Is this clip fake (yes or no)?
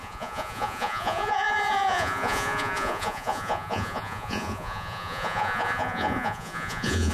yes